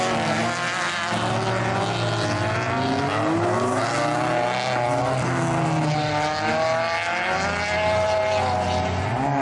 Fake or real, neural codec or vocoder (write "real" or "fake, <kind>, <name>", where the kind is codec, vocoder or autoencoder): real